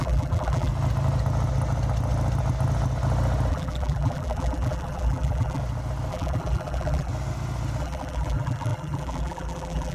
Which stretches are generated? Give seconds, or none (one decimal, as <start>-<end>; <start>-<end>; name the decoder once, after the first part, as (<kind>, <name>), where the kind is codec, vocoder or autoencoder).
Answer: 0.0-0.7 (vocoder, BigVGAN v2); 3.5-5.6; 6.1-7.1; 7.8-9.9